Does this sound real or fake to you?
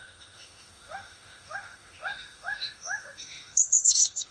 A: fake